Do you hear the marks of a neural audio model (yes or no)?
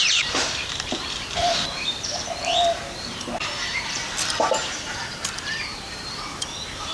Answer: yes